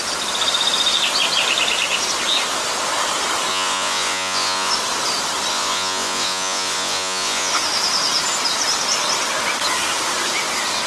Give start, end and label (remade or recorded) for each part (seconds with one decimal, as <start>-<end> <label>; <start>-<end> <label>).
0.0-3.5 recorded; 3.5-4.7 remade; 4.7-5.5 recorded; 5.5-7.5 remade; 7.5-10.9 recorded